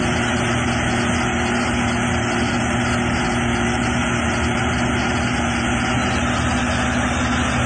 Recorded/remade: recorded